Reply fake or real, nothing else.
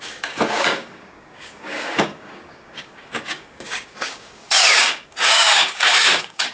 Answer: fake